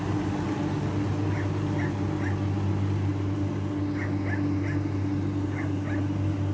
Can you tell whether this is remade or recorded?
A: recorded